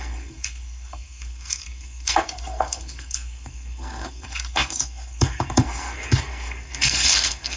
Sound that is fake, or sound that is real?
fake